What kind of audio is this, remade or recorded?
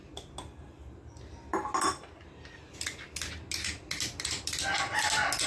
recorded